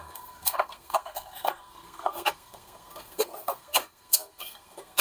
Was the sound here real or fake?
fake